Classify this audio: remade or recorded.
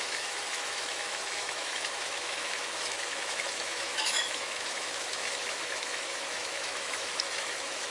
remade